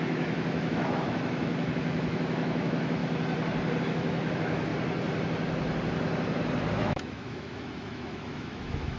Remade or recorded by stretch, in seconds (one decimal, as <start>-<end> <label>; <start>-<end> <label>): 0.0-3.0 remade; 3.0-3.8 recorded; 3.8-4.7 remade; 4.7-6.7 recorded; 6.7-9.0 remade